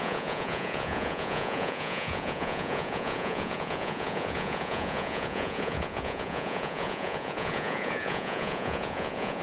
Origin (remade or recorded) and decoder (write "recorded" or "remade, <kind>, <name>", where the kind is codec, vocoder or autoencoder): remade, vocoder, Vocos